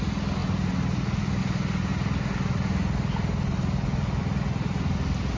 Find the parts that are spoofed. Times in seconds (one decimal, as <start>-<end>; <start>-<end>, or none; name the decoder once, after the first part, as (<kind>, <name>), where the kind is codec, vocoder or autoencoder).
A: none